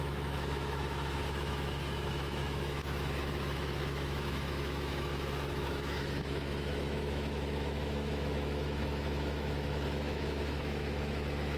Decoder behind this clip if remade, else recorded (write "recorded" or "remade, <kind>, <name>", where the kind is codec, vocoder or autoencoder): remade, autoencoder, DAC-VAE